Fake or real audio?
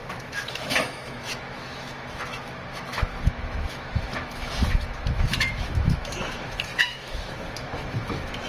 fake